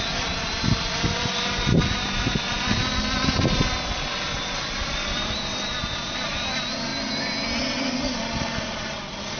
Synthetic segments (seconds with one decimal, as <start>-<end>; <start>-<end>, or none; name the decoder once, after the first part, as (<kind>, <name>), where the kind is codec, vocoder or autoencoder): none